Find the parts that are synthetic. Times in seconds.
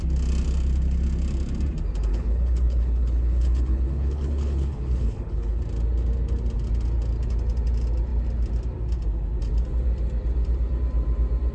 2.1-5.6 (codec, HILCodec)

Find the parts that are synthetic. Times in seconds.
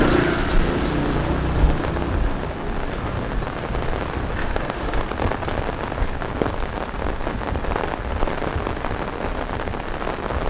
4.4-5.0 (autoencoder, DAC-VAE)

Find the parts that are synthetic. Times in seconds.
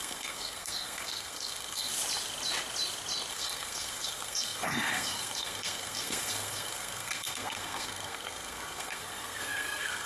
0.0-1.9 (codec, SNAC); 3.3-10.1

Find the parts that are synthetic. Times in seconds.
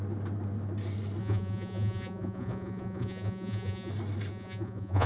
1.2-3.9 (vocoder, Vocos); 4.3-5.1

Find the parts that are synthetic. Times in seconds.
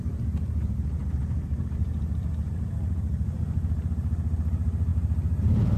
0.0-5.8 (vocoder, BigVGAN v2)